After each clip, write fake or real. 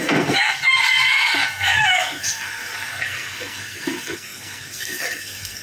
fake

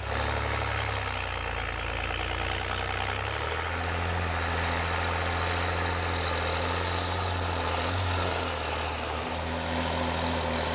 real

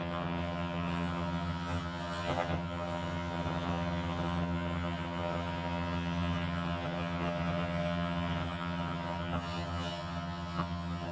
fake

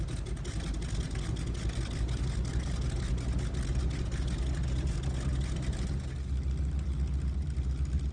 real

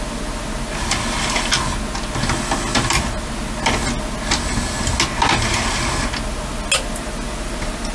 real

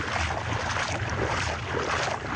real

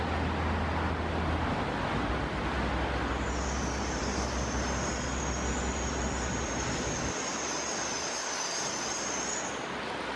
real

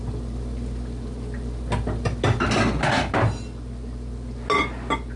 real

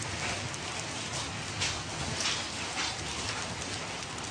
real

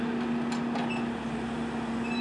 real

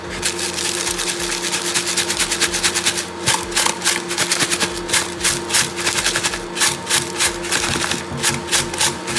real